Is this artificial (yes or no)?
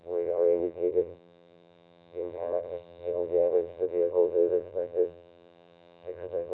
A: yes